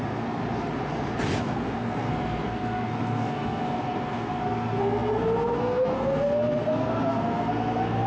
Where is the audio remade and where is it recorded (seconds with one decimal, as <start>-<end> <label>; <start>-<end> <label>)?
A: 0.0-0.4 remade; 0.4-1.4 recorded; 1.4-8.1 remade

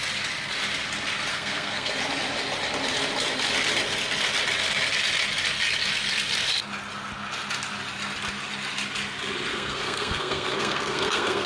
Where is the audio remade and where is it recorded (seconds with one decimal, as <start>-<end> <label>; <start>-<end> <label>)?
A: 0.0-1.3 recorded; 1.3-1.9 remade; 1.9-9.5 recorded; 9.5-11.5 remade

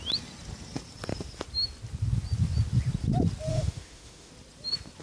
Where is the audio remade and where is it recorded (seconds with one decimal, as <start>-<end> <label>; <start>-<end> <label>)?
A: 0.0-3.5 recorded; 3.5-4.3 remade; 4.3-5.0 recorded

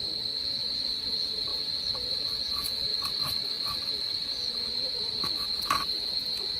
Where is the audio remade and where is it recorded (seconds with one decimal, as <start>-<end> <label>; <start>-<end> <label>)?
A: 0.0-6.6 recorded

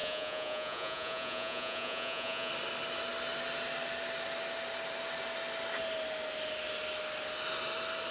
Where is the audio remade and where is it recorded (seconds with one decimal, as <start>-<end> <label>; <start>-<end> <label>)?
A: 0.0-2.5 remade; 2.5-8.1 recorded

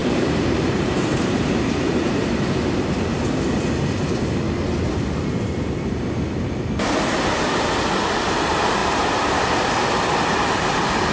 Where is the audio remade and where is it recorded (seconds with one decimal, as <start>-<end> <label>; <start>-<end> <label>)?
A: 0.0-2.3 remade; 2.3-11.1 recorded

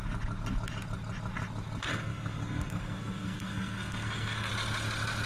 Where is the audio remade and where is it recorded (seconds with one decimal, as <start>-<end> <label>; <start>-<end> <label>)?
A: 0.0-1.9 recorded; 1.9-4.5 remade; 4.5-5.3 recorded